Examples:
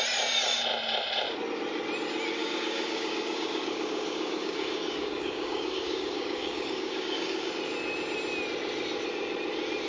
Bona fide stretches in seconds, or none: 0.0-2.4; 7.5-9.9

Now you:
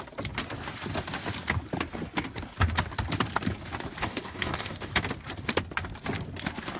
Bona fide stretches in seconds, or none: 0.0-4.0; 4.9-6.8

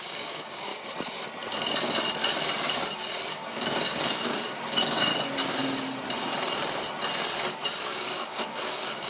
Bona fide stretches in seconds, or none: 0.7-3.3; 5.1-7.8

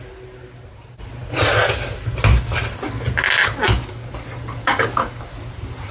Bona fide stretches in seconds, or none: 0.0-4.6; 5.2-5.9